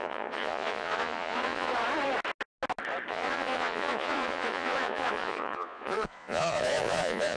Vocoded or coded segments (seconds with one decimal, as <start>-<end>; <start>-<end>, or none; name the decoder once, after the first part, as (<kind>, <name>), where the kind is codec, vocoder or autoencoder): 0.0-1.7 (vocoder, Vocos); 3.1-7.4